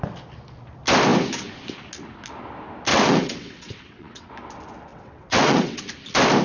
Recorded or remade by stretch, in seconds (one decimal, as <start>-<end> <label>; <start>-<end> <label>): 0.0-2.9 recorded; 2.9-4.3 remade; 4.3-4.9 recorded; 4.9-5.8 remade; 5.8-6.4 recorded